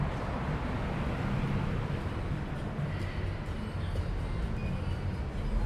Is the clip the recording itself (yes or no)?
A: yes